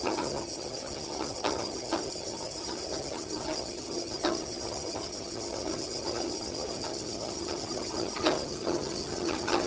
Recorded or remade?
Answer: remade